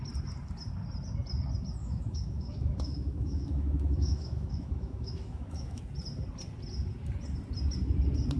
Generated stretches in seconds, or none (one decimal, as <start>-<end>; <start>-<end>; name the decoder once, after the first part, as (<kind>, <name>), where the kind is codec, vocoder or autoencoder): 1.8-5.8 (autoencoder, DAC-VAE)